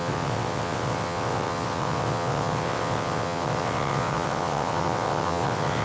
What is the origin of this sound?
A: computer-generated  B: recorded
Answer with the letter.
A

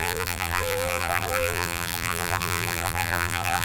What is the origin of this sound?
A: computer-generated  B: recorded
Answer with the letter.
A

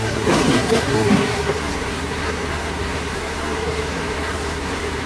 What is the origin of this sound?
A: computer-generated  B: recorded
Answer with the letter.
A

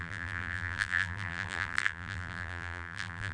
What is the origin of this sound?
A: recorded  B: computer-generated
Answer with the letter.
B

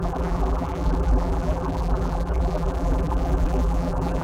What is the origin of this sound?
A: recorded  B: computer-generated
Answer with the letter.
B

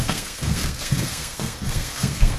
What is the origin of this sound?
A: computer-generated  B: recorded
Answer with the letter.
A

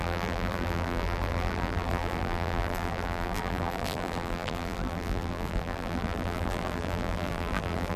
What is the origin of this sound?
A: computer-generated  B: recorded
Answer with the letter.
A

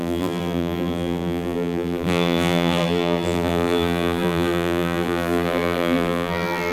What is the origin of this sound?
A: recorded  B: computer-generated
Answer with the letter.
B